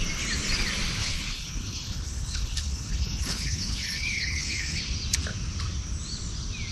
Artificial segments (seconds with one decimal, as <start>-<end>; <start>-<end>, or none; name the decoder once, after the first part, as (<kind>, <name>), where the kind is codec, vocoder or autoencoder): 1.0-4.8 (codec, HILCodec)